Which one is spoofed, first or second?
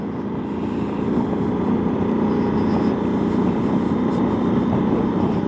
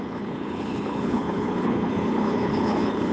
second